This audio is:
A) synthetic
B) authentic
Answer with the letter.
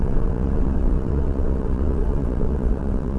A